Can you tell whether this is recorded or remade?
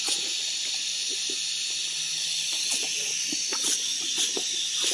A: recorded